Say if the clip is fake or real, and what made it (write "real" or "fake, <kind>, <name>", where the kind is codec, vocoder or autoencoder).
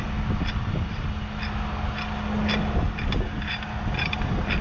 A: real